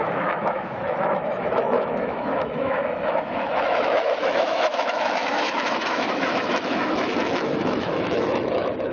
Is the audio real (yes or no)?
no